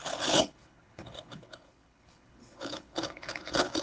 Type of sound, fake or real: fake